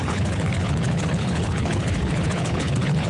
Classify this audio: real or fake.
fake